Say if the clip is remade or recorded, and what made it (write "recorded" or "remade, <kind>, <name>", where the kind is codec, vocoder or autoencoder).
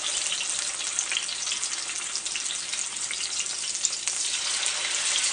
recorded